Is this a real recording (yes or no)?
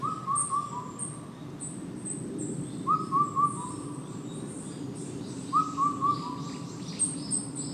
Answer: yes